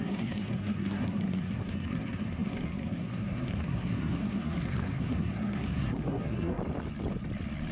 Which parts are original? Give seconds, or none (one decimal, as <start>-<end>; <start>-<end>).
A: 6.6-7.7